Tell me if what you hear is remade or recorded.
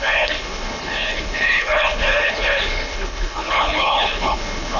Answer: remade